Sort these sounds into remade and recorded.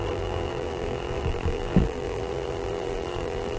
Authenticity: remade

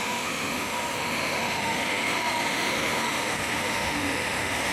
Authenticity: remade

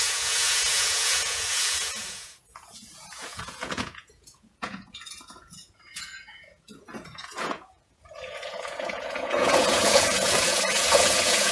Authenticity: remade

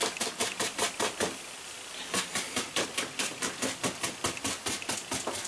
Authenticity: recorded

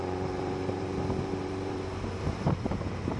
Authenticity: remade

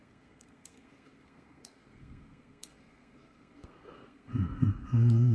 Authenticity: remade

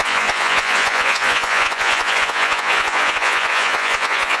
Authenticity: remade